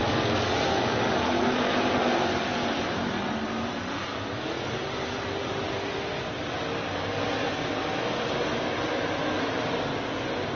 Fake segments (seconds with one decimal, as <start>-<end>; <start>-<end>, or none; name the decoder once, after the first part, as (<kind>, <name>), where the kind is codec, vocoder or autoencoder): none